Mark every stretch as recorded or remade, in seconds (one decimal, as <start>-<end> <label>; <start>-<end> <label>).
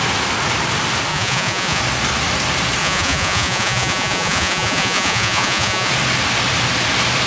0.0-1.1 recorded; 1.1-1.8 remade; 1.8-2.8 recorded; 2.8-5.9 remade; 5.9-7.3 recorded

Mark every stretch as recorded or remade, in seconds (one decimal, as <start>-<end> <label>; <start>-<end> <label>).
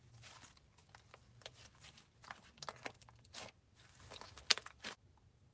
0.0-5.5 recorded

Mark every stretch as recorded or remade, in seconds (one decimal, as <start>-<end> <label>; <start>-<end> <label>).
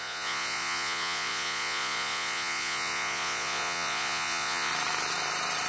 0.0-4.7 remade; 4.7-5.7 recorded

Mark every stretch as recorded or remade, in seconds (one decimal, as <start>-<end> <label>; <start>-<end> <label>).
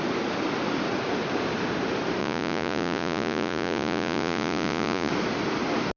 0.0-2.2 recorded; 2.2-5.1 remade; 5.1-6.0 recorded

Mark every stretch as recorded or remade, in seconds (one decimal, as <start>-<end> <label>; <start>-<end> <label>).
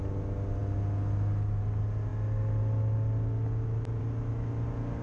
0.0-5.0 recorded